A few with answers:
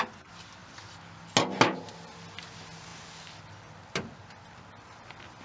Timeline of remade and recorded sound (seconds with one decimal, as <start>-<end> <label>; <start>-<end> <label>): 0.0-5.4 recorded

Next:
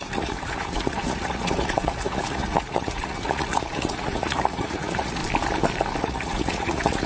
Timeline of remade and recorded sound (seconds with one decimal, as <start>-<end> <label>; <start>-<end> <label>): 0.0-5.2 remade; 5.2-6.0 recorded; 6.0-7.1 remade

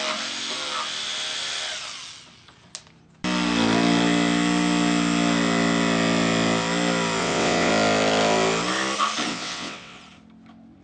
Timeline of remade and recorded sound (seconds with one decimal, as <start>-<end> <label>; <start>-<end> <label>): 0.0-7.2 recorded; 7.2-7.7 remade; 7.7-9.3 recorded; 9.3-10.0 remade; 10.0-10.8 recorded